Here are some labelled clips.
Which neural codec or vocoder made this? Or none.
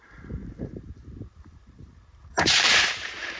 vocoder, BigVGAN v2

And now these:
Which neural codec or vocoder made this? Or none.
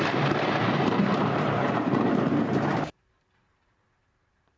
vocoder, BigVGAN v2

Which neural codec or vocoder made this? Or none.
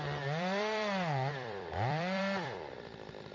vocoder, BigVGAN v2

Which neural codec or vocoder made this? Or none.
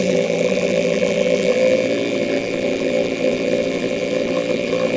vocoder, BigVGAN v2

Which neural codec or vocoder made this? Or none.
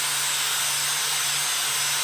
none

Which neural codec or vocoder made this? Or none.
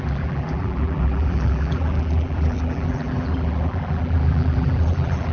vocoder, BigVGAN v2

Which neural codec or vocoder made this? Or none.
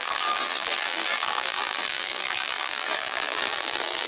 vocoder, BigVGAN v2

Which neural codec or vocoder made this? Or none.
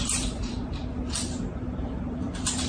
vocoder, BigVGAN v2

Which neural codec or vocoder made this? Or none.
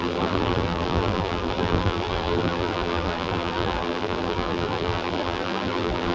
vocoder, BigVGAN v2